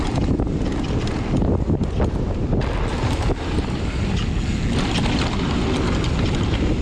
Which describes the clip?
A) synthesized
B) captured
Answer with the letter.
B